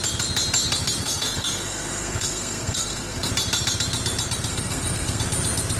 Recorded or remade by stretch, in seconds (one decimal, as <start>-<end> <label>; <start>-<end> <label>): 0.0-1.0 recorded; 1.0-3.3 remade; 3.3-4.5 recorded; 4.5-5.2 remade; 5.2-5.8 recorded